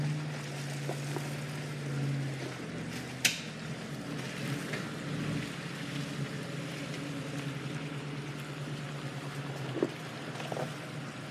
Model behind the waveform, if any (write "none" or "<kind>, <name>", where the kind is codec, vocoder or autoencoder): none